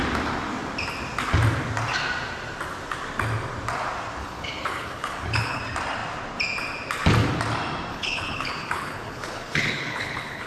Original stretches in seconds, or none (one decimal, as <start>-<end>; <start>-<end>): 0.0-4.2; 5.6-7.9